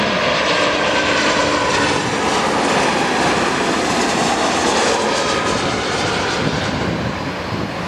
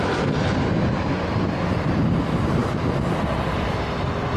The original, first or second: second